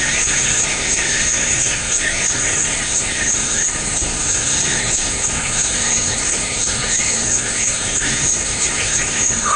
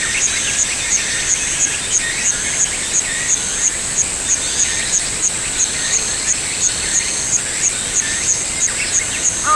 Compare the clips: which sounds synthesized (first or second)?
first